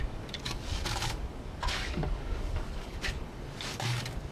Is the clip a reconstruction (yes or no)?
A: yes